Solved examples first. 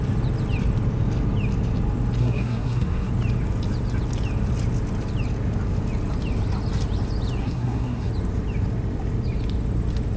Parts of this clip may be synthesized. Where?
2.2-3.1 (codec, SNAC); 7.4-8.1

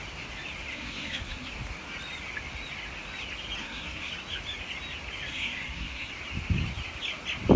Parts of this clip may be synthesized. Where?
0.7-1.5 (codec, SNAC); 3.6-4.1; 5.3-6.1